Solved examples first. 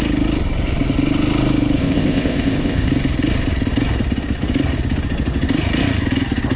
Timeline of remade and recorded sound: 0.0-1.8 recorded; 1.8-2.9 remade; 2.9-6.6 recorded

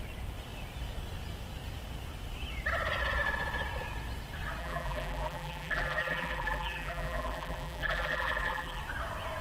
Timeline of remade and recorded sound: 0.0-4.6 recorded; 4.6-8.8 remade; 8.8-9.4 recorded